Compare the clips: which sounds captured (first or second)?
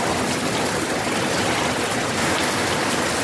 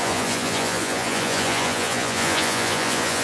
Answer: first